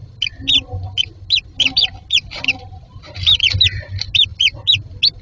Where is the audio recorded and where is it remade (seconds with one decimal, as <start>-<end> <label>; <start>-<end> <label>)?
0.0-5.2 recorded

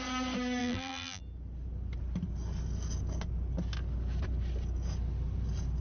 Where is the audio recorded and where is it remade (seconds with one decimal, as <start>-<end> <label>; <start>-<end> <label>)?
0.0-0.6 recorded; 0.6-1.2 remade; 1.2-5.8 recorded

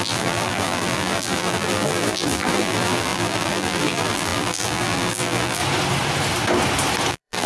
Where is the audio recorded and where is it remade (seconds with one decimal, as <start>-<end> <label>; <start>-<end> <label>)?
0.0-5.6 remade; 5.6-7.1 recorded; 7.1-7.5 remade